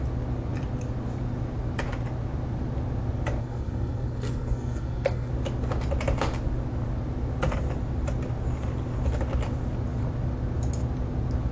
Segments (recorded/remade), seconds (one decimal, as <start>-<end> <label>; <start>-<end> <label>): 0.0-3.4 recorded; 3.4-5.3 remade; 5.3-11.5 recorded